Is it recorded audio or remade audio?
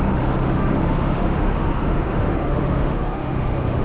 remade